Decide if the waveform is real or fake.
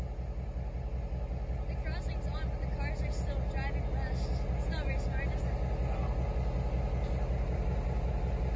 real